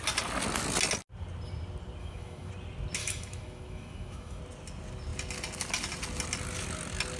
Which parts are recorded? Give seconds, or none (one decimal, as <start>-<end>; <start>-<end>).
0.0-2.0; 2.5-3.0; 4.4-7.2